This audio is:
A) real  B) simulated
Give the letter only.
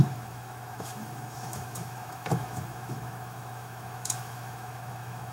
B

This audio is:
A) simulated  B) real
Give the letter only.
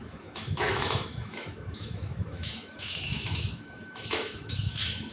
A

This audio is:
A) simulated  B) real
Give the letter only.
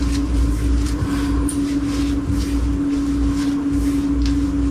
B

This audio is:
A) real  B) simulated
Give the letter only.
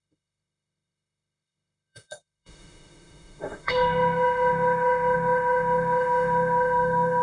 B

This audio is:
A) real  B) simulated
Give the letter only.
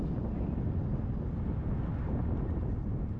A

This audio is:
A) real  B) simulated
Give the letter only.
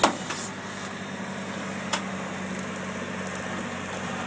A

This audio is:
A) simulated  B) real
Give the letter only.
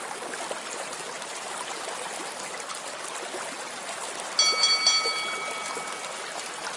B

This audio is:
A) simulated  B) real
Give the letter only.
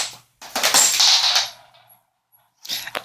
B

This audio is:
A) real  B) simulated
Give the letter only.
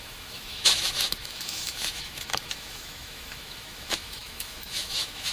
B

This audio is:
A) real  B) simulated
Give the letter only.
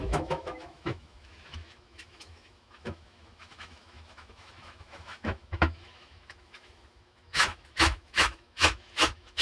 B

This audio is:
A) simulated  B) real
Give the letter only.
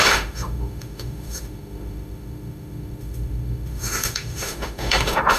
A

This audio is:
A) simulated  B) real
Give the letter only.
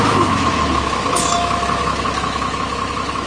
A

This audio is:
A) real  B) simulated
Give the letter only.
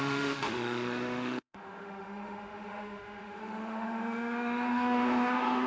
B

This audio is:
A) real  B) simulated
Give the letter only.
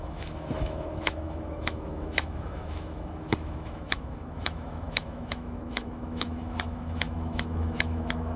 B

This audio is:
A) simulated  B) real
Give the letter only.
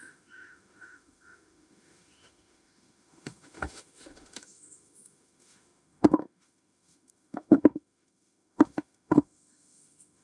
A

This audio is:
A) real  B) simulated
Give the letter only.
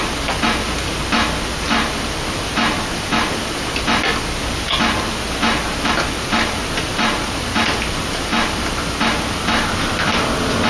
A